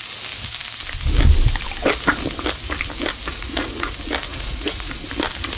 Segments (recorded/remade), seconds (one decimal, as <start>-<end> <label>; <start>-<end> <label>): 0.0-3.3 recorded; 3.3-3.9 remade; 3.9-4.3 recorded; 4.3-5.0 remade; 5.0-5.6 recorded

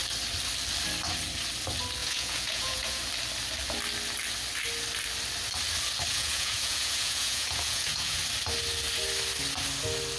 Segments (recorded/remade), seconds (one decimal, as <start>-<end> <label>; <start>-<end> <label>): 0.0-2.0 recorded; 2.0-3.0 remade; 3.0-6.1 recorded; 6.1-8.2 remade; 8.2-10.2 recorded